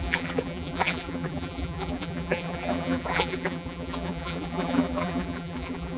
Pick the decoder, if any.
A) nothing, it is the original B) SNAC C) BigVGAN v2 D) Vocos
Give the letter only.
C